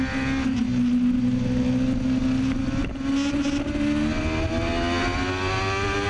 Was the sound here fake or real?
real